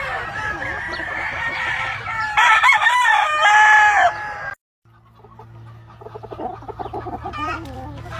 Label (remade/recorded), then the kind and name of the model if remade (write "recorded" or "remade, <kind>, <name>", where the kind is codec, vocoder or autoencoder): recorded